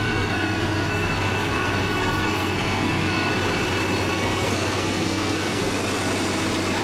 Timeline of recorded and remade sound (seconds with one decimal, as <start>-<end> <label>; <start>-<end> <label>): 0.0-3.3 remade; 3.3-4.1 recorded; 4.1-5.8 remade; 5.8-6.8 recorded